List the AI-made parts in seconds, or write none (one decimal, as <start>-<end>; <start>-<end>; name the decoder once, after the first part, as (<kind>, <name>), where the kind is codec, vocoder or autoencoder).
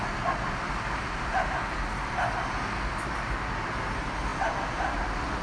none